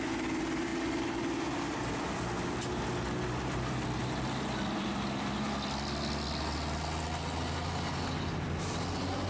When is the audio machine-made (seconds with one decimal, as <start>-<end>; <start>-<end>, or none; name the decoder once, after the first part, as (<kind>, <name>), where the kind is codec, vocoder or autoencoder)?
none